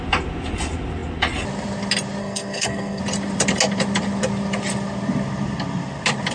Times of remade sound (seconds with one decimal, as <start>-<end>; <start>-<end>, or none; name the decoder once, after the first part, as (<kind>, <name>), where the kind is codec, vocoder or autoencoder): 2.2-3.0 (codec, SNAC)